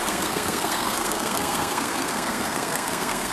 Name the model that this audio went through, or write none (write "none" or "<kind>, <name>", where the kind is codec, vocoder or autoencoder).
codec, SNAC